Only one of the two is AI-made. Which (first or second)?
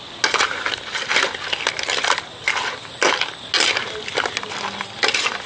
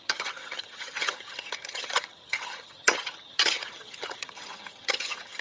second